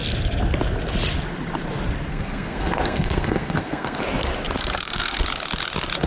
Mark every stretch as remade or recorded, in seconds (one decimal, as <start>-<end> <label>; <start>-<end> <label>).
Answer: 0.0-2.1 recorded; 2.1-4.0 remade; 4.0-4.6 recorded; 4.6-5.2 remade; 5.2-6.1 recorded